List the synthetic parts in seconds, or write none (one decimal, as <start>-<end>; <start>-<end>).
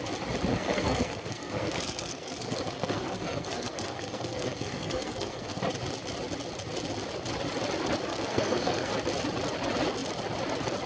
0.5-5.6; 8.1-8.9